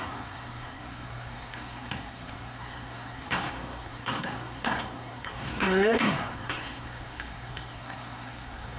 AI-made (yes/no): yes